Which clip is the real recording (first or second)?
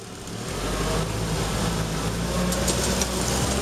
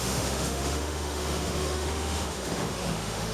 first